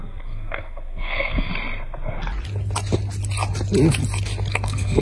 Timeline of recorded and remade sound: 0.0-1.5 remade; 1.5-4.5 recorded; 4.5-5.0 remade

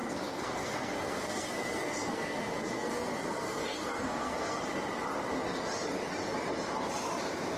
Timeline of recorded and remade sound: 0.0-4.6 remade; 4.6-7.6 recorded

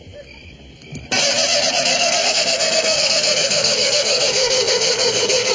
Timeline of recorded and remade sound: 0.0-1.9 recorded; 1.9-5.5 remade

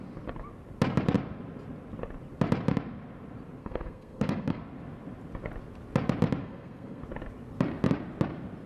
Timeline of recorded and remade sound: 0.0-3.6 recorded; 3.6-4.6 remade; 4.6-6.4 recorded; 6.4-7.0 remade; 7.0-8.7 recorded

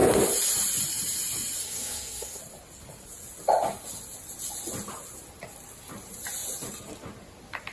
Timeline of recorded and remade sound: 0.0-1.6 recorded; 1.6-2.4 remade; 2.4-7.7 recorded

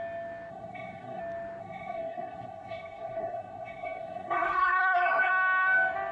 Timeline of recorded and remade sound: 0.0-0.5 recorded; 0.5-1.2 remade; 1.2-1.6 recorded; 1.6-5.3 remade; 5.3-6.1 recorded

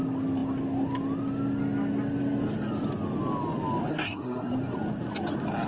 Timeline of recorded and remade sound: 0.0-3.9 recorded; 3.9-4.5 remade; 4.5-5.7 recorded

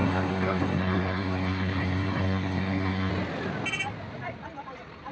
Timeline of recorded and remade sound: 0.0-3.1 remade; 3.1-5.1 recorded